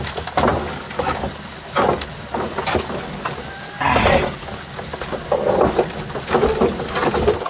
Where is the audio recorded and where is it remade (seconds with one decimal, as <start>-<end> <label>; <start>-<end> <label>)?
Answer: 0.0-7.5 recorded